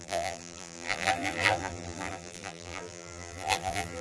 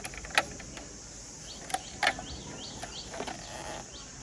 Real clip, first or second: second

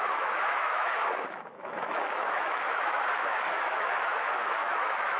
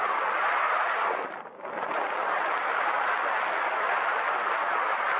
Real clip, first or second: second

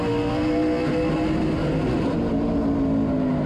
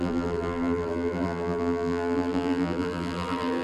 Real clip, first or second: first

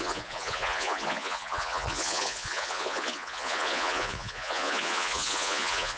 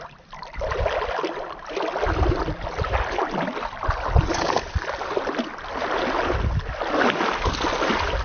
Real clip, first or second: second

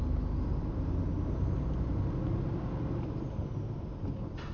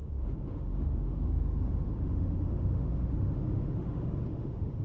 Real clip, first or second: first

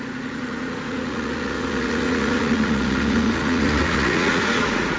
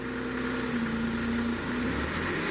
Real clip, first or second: second